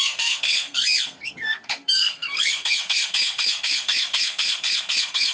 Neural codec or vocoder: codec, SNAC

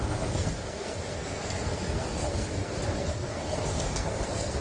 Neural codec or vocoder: codec, SNAC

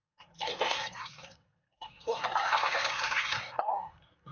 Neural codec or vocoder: codec, SNAC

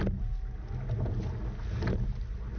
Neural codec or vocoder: none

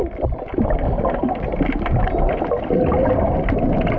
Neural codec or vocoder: none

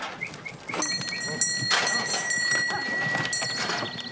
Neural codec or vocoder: none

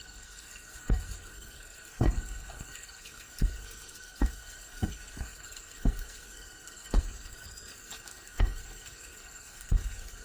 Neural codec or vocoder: codec, SNAC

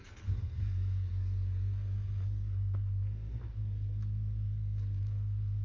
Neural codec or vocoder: codec, SNAC